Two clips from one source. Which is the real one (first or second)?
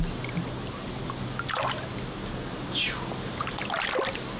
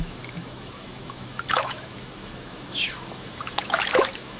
first